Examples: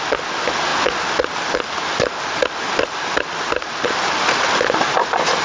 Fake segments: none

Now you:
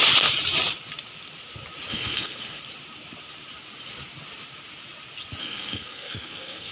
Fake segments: 1.9-2.6; 5.4-6.7